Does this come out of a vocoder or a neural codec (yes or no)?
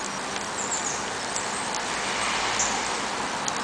no